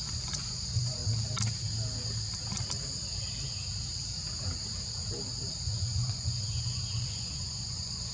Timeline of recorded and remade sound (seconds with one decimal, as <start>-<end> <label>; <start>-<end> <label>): 0.0-1.0 remade; 1.0-5.5 recorded; 5.5-8.1 remade